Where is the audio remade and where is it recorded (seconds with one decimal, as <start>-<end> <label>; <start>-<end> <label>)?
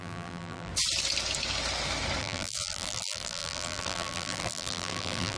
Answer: 0.0-0.7 remade; 0.7-2.2 recorded; 2.2-5.4 remade